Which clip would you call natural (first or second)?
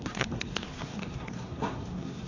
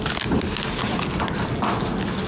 second